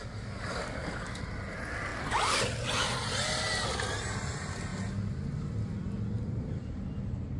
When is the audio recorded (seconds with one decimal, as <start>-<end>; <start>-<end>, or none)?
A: 1.2-7.4